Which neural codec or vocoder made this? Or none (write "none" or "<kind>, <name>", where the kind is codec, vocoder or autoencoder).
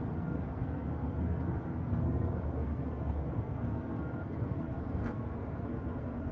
codec, SNAC